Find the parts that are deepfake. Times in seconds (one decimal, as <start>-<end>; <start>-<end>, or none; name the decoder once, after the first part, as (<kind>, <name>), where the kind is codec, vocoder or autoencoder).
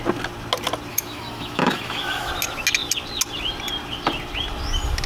0.9-2.3 (autoencoder, DAC-VAE)